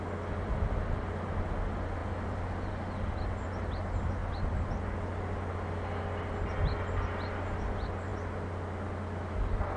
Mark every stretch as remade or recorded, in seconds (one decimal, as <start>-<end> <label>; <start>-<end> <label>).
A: 0.0-9.8 recorded